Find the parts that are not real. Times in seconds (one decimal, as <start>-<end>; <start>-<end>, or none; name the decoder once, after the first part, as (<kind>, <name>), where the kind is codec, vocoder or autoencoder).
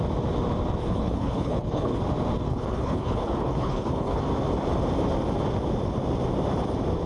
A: 0.8-2.0 (codec, HILCodec); 2.5-4.2